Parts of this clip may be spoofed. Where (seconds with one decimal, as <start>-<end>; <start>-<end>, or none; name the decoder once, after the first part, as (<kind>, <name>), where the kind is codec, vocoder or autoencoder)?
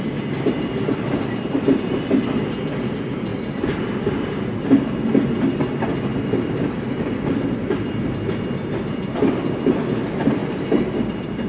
0.0-3.3 (vocoder, BigVGAN v2); 5.6-6.1; 6.7-11.5